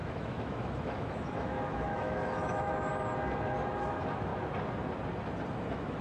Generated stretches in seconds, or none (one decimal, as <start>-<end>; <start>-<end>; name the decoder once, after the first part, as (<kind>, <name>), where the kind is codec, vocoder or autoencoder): 0.0-2.9 (autoencoder, DAC-VAE); 3.8-4.3; 5.5-6.0